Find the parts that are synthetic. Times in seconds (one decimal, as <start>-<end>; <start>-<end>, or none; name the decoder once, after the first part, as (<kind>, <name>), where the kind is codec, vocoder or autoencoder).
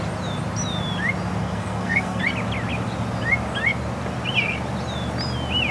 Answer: 1.4-2.2 (codec, SNAC)